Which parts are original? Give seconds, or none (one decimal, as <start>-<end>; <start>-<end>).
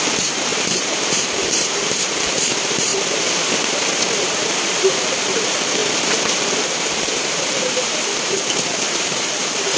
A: 2.9-4.2